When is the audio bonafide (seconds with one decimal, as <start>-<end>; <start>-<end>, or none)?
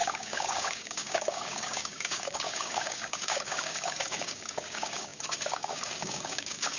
none